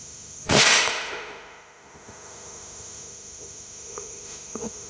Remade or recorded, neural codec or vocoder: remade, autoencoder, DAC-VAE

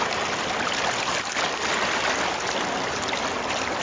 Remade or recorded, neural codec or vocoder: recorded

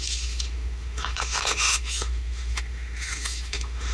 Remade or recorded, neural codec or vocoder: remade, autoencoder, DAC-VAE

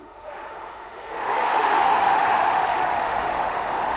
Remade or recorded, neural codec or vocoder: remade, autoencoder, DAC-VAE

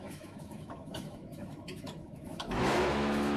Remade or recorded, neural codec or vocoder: remade, autoencoder, DAC-VAE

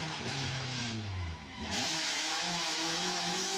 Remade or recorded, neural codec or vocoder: remade, autoencoder, DAC-VAE